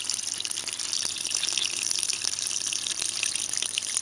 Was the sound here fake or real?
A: fake